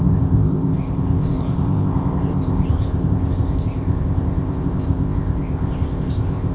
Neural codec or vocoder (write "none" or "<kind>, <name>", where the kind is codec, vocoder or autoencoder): codec, ZipCodec